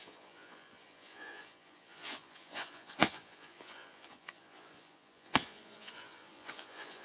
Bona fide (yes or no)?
no